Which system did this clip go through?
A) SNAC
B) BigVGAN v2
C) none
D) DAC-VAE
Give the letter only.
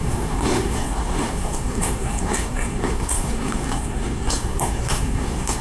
A